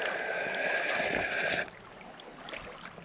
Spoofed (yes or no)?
no